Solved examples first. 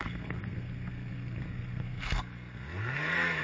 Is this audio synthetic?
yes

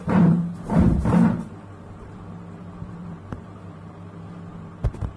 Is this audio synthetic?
yes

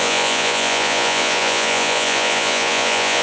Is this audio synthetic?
yes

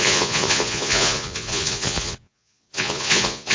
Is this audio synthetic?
yes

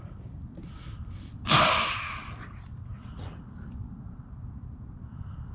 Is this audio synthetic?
no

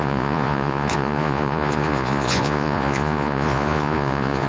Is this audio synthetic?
yes